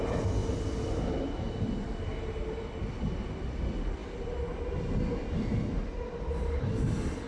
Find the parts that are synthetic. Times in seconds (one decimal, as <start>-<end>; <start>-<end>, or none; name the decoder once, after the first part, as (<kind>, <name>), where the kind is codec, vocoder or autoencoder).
none